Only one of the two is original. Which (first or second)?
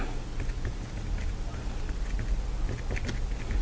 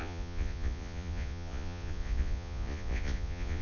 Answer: first